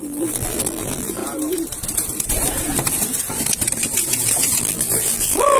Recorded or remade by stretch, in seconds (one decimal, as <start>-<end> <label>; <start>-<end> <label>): 0.0-1.2 remade; 1.2-4.6 recorded; 4.6-5.6 remade